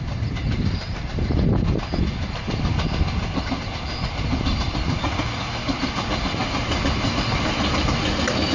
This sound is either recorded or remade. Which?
recorded